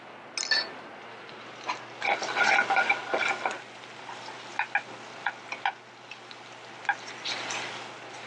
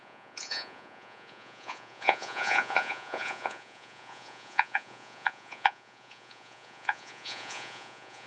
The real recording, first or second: first